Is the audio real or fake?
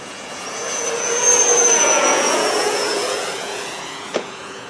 fake